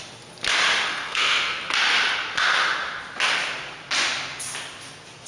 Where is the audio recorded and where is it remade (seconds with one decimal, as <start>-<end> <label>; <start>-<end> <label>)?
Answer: 0.0-0.9 recorded; 0.9-1.6 remade; 1.6-5.3 recorded